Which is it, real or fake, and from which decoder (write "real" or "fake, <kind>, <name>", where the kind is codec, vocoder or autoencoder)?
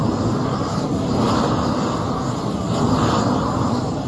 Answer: real